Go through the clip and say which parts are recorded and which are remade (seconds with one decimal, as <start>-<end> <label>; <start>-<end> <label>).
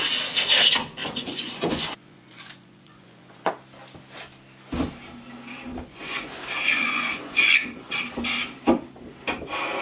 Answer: 0.0-1.0 recorded; 1.0-3.5 remade; 3.5-5.7 recorded; 5.7-6.3 remade; 6.3-6.7 recorded; 6.7-8.0 remade; 8.0-9.8 recorded